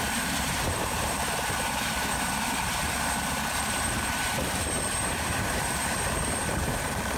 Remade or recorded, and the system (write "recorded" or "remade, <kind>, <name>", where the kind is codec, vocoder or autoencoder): remade, vocoder, BigVGAN v2